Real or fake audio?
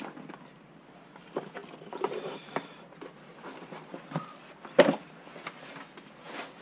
real